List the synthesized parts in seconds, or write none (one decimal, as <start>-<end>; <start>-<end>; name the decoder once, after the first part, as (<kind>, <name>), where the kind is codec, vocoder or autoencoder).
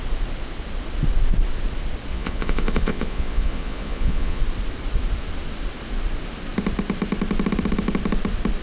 2.1-4.4 (vocoder, Vocos)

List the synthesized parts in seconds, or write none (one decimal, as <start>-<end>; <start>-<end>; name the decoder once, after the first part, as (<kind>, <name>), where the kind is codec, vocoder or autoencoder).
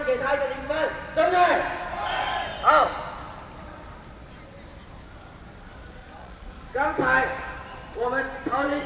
6.0-6.5 (vocoder, Vocos)